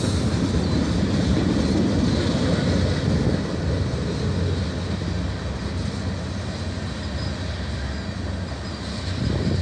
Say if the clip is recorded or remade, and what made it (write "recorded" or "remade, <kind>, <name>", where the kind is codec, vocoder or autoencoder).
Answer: recorded